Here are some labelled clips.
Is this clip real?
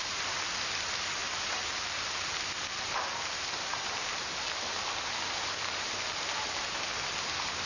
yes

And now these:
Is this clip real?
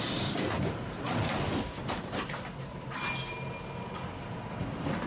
yes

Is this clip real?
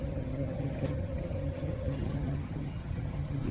no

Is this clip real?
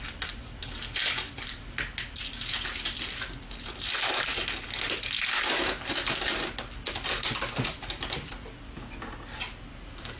yes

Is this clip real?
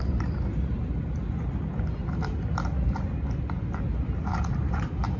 yes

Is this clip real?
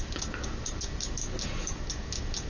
yes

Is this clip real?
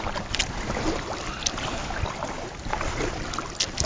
yes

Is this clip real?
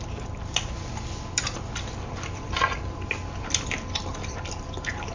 yes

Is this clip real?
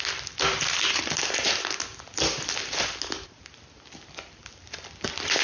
yes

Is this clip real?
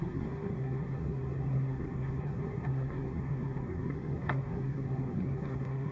no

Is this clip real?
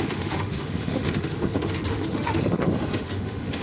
no